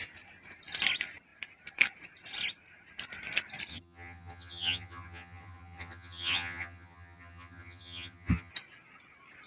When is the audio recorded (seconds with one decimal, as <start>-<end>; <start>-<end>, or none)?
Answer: 0.0-3.7; 8.5-9.5